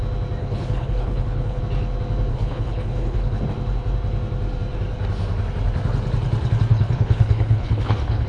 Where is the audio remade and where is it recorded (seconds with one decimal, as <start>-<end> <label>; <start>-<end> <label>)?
0.0-0.4 recorded; 0.4-1.6 remade; 1.6-2.3 recorded; 2.3-3.4 remade; 3.4-6.7 recorded; 6.7-8.3 remade

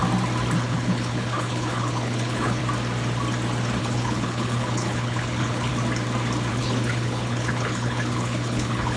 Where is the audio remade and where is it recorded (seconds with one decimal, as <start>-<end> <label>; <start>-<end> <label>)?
0.0-0.6 recorded; 0.6-2.6 remade; 2.6-3.8 recorded; 3.8-5.7 remade; 5.7-6.5 recorded; 6.5-9.0 remade

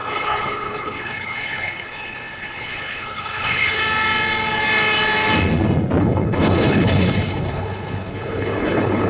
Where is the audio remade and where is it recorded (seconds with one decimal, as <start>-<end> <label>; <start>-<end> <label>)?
0.0-3.8 remade; 3.8-6.0 recorded; 6.0-9.1 remade

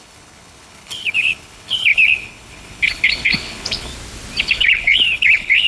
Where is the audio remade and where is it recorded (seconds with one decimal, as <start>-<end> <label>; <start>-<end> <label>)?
0.0-3.9 remade; 3.9-4.4 recorded; 4.4-5.7 remade